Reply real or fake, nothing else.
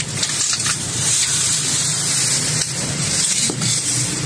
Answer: fake